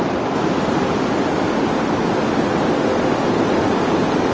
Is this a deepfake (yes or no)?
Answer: no